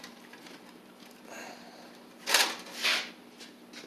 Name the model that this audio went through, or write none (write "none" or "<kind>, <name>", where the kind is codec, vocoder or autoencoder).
none